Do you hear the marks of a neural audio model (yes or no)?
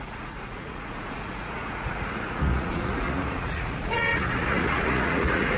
yes